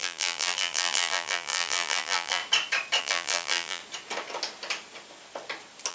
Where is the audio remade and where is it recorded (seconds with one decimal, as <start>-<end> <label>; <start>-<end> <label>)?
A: 0.0-2.4 remade; 2.4-3.0 recorded; 3.0-3.8 remade; 3.8-5.9 recorded